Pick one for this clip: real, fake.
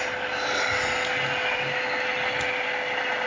real